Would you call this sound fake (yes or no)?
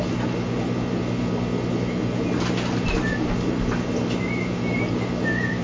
no